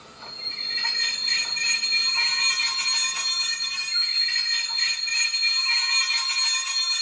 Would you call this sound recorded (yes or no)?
yes